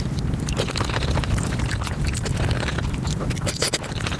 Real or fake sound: fake